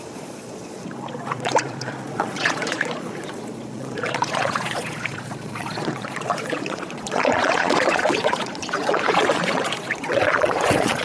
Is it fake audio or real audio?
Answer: fake